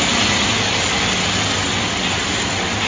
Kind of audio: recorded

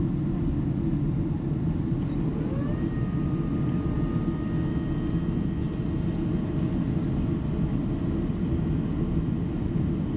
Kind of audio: recorded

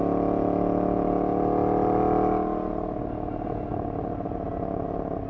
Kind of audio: recorded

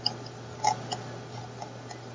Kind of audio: recorded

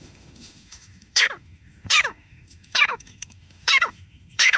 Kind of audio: remade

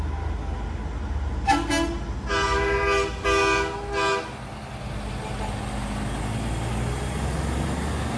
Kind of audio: recorded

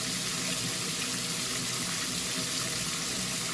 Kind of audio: recorded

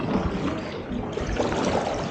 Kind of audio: recorded